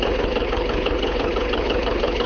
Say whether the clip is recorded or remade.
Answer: remade